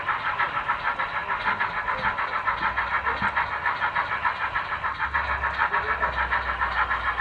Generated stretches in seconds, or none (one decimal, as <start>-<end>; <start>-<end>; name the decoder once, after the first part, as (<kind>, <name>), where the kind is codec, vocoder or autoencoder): none